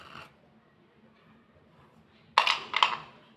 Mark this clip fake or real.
real